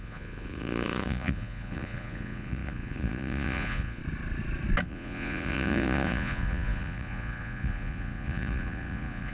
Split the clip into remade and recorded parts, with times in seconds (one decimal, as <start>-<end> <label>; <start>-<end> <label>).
0.0-4.0 remade; 4.0-4.8 recorded; 4.8-9.3 remade